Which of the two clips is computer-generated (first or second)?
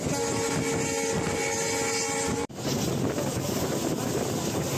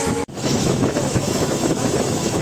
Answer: second